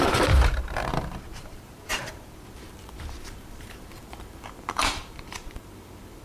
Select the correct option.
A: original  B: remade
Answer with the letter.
B